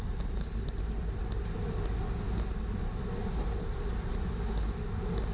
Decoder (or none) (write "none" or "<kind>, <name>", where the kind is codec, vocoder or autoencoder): none